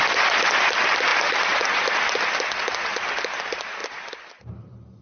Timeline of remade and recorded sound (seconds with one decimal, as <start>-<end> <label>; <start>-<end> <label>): 0.0-5.0 recorded